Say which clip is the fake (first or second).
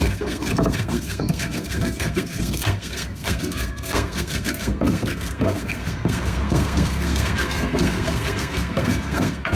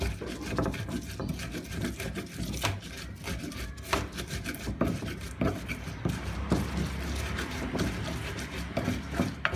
first